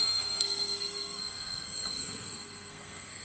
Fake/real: fake